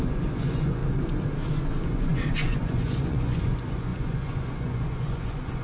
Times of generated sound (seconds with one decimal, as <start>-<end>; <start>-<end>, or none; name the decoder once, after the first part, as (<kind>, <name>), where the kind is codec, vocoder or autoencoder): 0.0-0.8 (vocoder, Vocos); 1.6-5.6